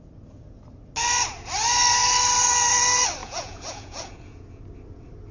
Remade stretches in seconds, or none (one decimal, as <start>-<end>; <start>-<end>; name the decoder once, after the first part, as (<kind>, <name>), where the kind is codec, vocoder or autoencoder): 3.2-4.6 (vocoder, Vocos)